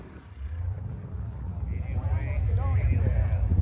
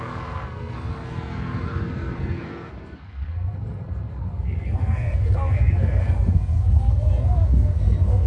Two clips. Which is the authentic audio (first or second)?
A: first